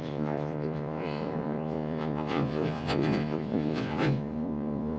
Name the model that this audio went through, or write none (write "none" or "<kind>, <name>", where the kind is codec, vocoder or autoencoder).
vocoder, Vocos